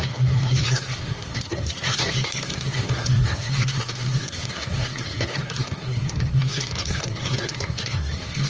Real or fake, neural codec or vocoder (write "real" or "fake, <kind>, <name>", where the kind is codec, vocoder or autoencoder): fake, codec, SNAC